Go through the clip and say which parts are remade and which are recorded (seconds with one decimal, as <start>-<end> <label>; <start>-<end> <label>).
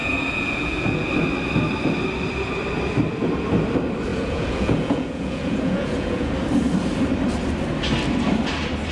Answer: 0.0-1.1 remade; 1.1-4.1 recorded; 4.1-6.3 remade; 6.3-8.9 recorded